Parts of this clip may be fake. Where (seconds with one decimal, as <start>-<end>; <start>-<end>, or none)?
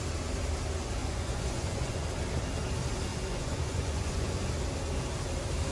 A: 1.0-2.1; 3.1-4.4